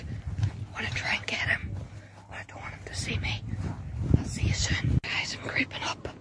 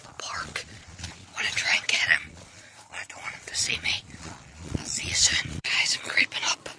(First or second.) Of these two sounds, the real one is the first